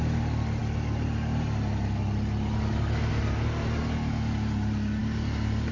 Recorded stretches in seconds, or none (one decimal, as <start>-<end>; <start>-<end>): 0.0-5.7